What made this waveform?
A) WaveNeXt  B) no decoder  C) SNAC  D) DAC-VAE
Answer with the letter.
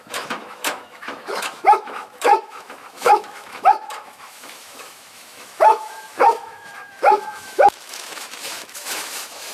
D